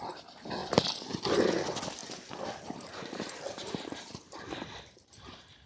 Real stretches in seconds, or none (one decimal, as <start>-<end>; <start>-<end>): 0.0-0.6; 1.3-2.0